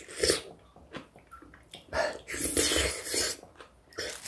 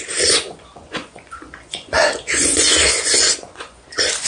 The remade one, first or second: second